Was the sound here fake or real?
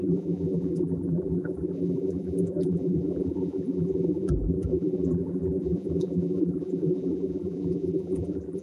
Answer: fake